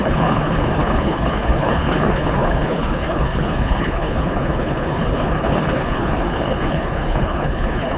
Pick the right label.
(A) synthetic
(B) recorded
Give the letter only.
A